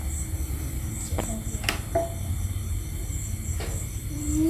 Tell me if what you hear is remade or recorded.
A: recorded